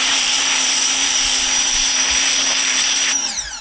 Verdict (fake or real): fake